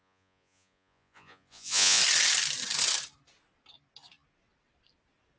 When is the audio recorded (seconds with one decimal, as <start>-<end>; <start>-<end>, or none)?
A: 2.0-5.4